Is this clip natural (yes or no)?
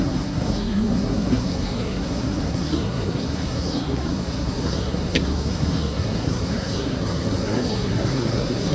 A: no